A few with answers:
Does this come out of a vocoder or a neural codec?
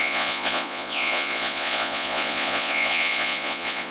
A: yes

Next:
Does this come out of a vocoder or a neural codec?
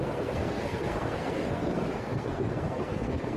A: yes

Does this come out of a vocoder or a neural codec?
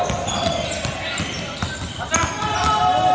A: no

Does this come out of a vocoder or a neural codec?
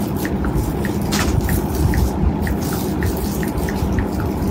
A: no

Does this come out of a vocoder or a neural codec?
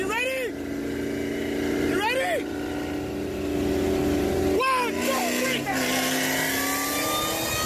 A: no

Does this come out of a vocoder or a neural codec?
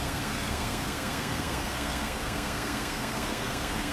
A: yes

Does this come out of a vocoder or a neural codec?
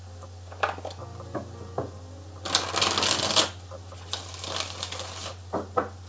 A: no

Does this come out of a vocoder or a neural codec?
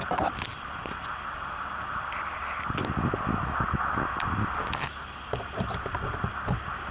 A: no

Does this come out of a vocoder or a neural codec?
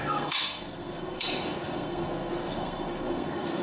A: yes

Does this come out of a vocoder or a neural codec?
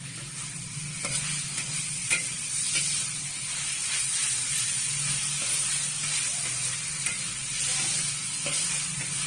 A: no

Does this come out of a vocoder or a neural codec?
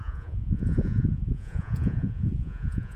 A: yes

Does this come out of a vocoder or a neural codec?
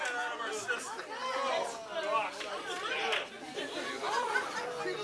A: no